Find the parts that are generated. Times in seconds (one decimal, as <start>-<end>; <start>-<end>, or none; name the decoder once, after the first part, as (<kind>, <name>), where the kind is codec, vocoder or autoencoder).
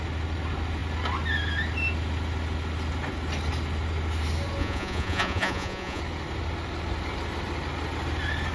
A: 4.6-6.0 (vocoder, Vocos)